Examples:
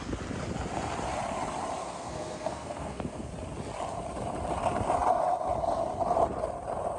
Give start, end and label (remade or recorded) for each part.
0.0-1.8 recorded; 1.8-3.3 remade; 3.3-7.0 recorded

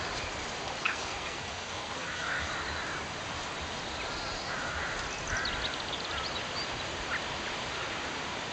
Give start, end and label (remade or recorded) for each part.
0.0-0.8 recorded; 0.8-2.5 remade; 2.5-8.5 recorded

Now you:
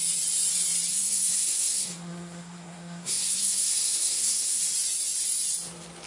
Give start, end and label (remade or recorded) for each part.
0.0-0.9 recorded; 0.9-4.6 remade; 4.6-6.1 recorded

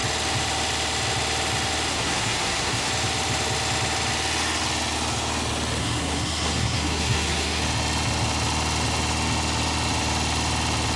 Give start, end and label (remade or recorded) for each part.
0.0-1.9 recorded; 1.9-2.9 remade; 2.9-5.8 recorded; 5.8-7.6 remade; 7.6-11.0 recorded

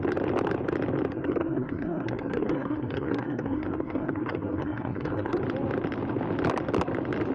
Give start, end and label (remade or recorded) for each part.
0.0-1.1 recorded; 1.1-5.4 remade; 5.4-7.3 recorded

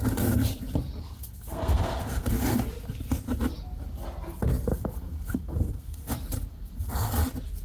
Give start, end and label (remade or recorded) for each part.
0.0-1.0 recorded; 1.0-2.6 remade; 2.6-4.7 recorded; 4.7-6.1 remade; 6.1-6.5 recorded; 6.5-7.1 remade; 7.1-7.6 recorded